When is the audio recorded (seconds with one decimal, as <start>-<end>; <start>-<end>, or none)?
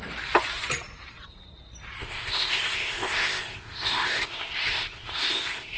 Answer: 0.0-2.0